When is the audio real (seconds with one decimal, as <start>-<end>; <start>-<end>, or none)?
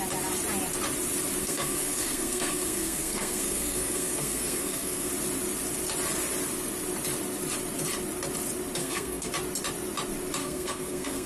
0.0-1.4; 5.1-8.8; 9.3-10.4